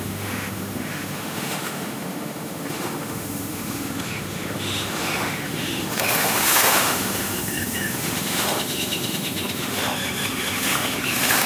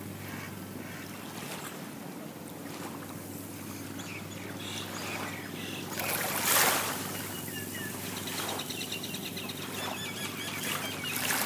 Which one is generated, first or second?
first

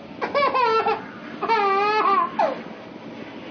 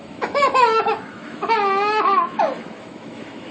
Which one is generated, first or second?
second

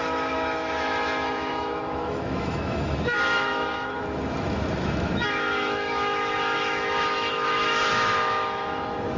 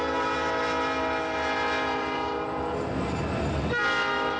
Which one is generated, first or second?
first